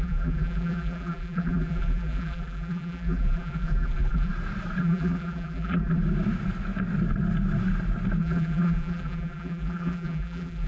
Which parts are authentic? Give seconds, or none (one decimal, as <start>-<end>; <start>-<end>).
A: 4.3-4.8; 6.0-8.2